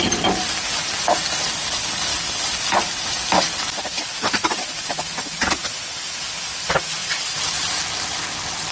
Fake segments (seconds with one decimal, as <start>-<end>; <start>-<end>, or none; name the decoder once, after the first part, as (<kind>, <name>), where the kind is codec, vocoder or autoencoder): 2.1-4.9 (vocoder, BigVGAN v2); 7.0-8.7